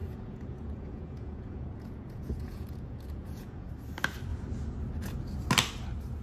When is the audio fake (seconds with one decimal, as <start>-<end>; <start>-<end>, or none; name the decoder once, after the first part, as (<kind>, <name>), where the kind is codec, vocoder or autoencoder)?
0.0-3.7 (vocoder, Vocos)